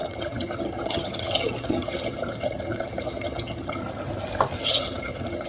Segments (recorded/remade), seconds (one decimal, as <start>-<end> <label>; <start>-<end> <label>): 0.0-3.8 remade; 3.8-4.6 recorded; 4.6-5.5 remade